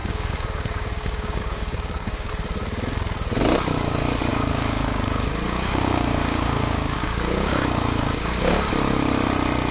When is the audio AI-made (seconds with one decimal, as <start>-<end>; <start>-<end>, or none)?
0.0-2.3; 4.3-8.7

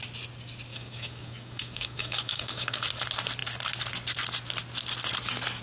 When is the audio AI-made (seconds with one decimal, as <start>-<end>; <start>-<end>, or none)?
0.7-2.8

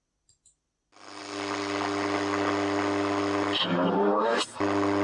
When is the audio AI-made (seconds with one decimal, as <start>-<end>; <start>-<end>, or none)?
none

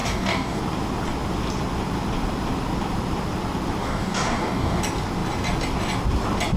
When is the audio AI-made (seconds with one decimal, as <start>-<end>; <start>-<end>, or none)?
0.0-0.6; 3.8-4.8

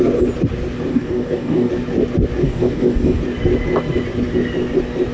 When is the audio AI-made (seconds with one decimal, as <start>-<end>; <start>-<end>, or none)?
0.9-1.7; 2.4-3.2

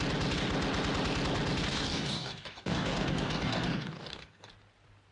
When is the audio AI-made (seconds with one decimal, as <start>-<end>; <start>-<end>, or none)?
1.7-4.5

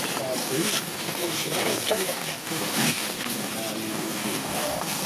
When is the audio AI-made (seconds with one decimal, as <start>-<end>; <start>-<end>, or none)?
0.4-3.5; 3.9-5.1